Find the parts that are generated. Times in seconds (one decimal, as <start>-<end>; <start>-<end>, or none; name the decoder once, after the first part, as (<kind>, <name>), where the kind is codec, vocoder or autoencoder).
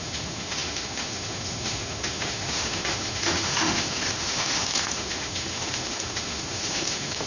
0.0-7.3 (autoencoder, DAC-VAE)